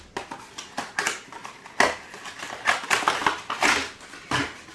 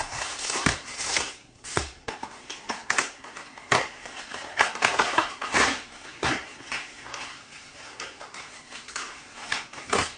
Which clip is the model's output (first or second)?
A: second